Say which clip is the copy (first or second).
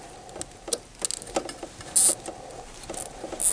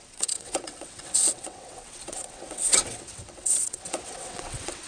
second